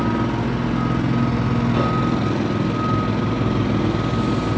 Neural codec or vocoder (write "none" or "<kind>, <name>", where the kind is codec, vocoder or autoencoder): none